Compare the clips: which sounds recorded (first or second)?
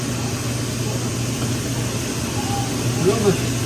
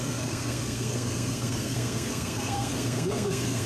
first